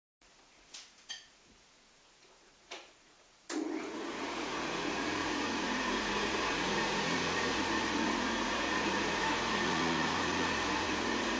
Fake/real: fake